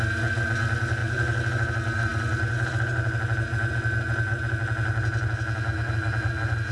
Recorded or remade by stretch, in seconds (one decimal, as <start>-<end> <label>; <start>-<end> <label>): 0.0-6.7 recorded